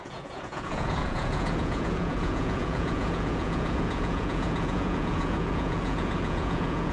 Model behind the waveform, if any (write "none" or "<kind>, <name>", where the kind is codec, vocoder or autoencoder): vocoder, Vocos